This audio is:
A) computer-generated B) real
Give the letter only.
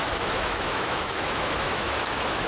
A